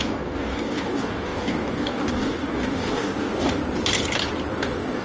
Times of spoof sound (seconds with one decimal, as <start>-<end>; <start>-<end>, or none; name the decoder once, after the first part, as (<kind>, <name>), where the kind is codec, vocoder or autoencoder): 0.0-3.6 (codec, DAC); 4.5-5.0

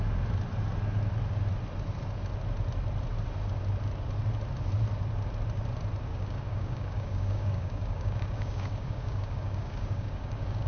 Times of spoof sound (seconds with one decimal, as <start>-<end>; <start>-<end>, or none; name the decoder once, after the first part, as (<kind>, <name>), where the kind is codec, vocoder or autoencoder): 6.1-10.7 (codec, DAC)

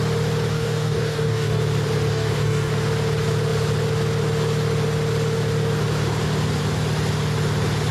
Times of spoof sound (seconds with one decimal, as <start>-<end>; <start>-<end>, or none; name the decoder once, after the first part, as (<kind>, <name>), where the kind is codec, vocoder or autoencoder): 0.5-1.6 (codec, DAC); 2.1-2.7